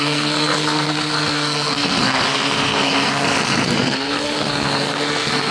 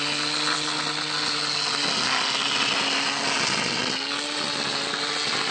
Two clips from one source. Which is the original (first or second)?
second